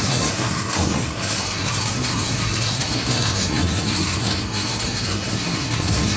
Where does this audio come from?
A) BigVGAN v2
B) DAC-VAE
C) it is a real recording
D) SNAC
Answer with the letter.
D